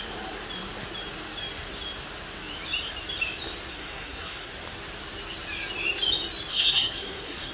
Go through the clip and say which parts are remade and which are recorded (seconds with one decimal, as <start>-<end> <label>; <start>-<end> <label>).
0.0-3.7 recorded; 3.7-4.5 remade; 4.5-6.5 recorded; 6.5-7.5 remade